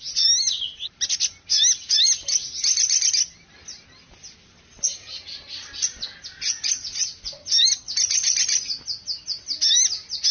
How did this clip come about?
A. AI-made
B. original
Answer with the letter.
B